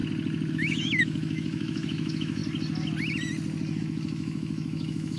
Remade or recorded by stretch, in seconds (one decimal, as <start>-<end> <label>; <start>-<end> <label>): 0.0-0.5 recorded; 0.5-2.4 remade; 2.4-3.8 recorded; 3.8-5.2 remade